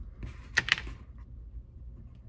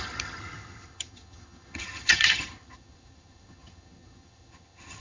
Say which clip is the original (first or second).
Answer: first